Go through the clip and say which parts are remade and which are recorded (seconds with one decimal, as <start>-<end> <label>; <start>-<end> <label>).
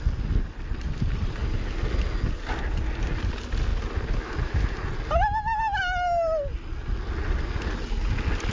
0.0-8.5 recorded